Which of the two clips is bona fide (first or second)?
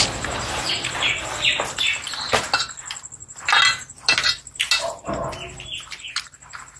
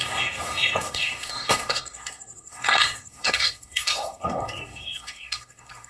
first